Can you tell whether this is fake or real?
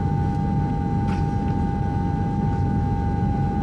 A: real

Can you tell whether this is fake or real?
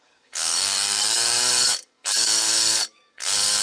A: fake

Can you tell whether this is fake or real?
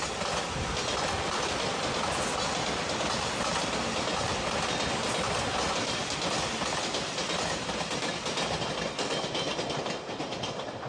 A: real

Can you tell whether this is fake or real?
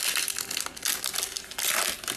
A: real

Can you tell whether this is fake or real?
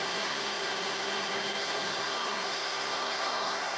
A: fake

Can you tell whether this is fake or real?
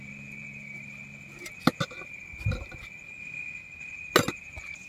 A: real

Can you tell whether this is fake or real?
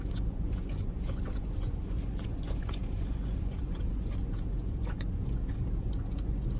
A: fake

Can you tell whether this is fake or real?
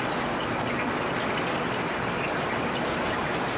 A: real